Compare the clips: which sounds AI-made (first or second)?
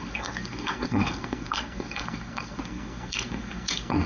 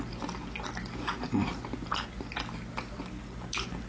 first